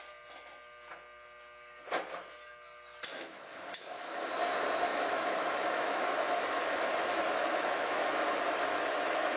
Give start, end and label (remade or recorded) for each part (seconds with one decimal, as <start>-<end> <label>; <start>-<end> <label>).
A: 0.0-3.1 recorded; 3.1-4.3 remade; 4.3-4.9 recorded; 4.9-9.4 remade